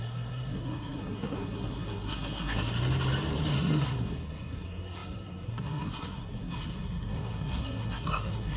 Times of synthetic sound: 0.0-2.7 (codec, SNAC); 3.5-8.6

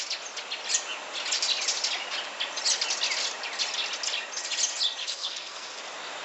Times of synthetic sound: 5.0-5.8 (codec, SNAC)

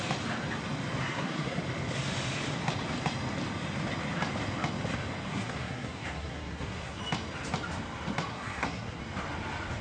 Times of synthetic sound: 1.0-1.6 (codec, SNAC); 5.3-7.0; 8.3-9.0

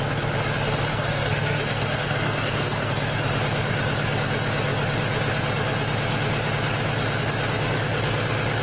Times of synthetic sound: 0.9-2.9 (codec, SNAC)

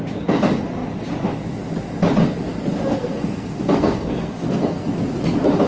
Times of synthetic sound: 2.9-5.0 (codec, SNAC)

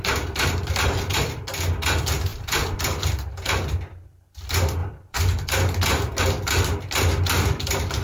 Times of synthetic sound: none